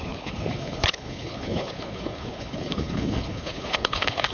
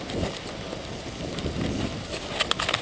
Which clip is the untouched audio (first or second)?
second